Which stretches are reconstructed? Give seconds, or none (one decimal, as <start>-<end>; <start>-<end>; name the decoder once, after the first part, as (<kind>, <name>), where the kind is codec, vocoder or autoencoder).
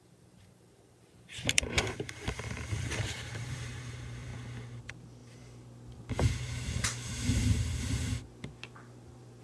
0.0-4.3 (vocoder, BigVGAN v2); 4.8-7.4; 8.7-9.4